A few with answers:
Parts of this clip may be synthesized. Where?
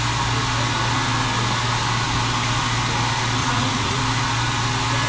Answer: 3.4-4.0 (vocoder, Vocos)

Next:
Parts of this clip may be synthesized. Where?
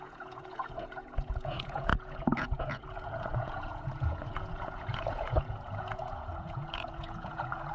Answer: 0.0-7.7 (vocoder, Vocos)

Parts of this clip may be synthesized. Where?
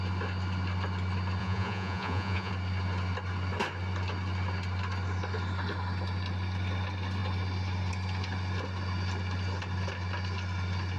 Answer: 1.4-2.5 (vocoder, Vocos)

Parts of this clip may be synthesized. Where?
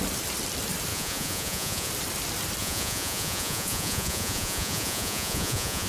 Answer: 0.9-1.9 (vocoder, Vocos); 2.6-5.9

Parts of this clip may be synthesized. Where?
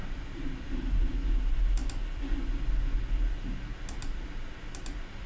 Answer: none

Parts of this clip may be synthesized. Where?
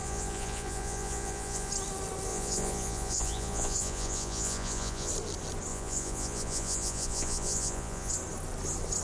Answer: 0.0-1.7 (vocoder, Vocos); 2.3-5.1; 5.7-8.1